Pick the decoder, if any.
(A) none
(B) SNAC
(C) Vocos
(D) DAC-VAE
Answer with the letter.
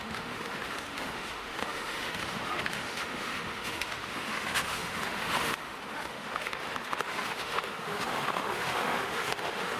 D